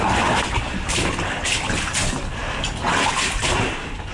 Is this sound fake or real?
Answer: real